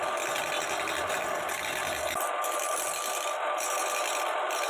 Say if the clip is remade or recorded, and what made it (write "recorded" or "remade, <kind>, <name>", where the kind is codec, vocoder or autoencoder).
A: recorded